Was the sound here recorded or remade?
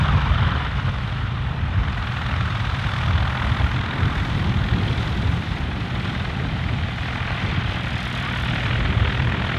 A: remade